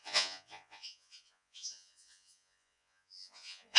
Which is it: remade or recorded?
remade